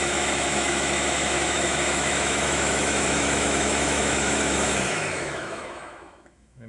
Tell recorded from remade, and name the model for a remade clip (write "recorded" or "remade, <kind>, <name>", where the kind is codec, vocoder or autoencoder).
remade, autoencoder, DAC-VAE